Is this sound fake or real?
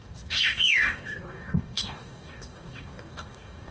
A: fake